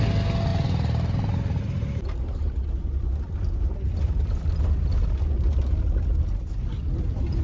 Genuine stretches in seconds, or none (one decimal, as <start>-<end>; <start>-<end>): 0.0-7.4